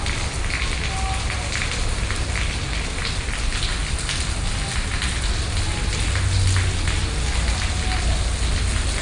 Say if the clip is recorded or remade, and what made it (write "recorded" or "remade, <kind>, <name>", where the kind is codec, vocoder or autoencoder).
recorded